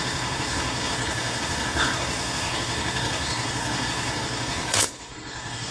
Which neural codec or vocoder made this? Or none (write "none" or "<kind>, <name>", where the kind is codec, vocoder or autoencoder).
codec, SNAC